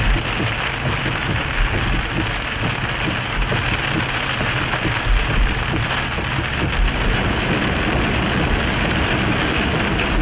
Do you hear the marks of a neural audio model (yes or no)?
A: no